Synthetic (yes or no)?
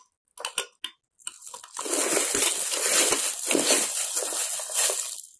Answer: no